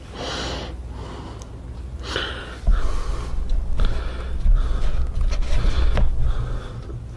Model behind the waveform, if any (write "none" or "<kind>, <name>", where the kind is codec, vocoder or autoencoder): none